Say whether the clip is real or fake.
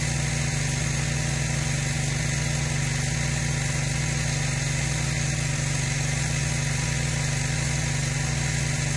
real